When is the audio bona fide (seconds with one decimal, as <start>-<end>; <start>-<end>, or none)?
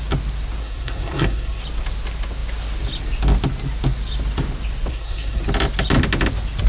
0.0-0.6; 1.6-4.9; 5.4-6.7